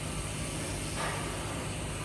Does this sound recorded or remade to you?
recorded